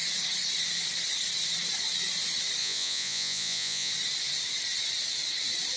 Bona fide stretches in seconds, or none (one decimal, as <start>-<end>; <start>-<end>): 0.0-2.6; 3.9-5.8